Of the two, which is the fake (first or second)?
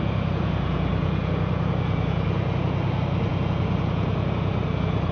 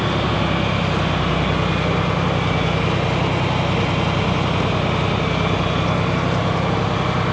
first